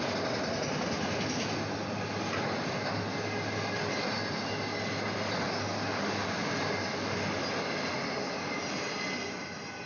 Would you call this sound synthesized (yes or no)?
no